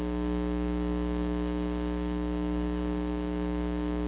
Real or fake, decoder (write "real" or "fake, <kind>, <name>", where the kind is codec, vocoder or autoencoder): fake, codec, DAC